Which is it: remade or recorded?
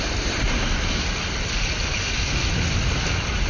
recorded